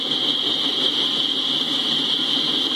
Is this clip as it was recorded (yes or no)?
yes